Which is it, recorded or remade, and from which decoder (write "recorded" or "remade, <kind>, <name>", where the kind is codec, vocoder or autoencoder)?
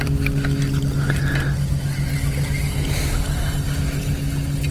recorded